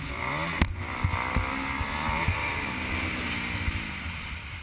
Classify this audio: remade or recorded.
recorded